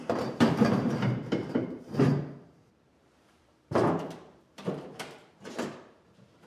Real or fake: fake